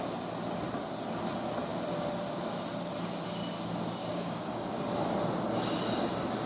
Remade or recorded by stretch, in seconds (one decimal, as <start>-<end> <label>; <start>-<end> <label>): 0.0-4.0 recorded; 4.0-4.8 remade; 4.8-6.5 recorded